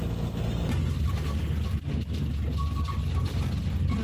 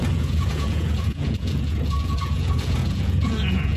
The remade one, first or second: second